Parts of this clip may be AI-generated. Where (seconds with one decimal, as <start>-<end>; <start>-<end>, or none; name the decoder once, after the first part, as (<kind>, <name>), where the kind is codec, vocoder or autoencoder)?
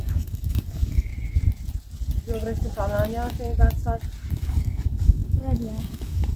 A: 0.0-1.1 (codec, DAC); 4.3-6.4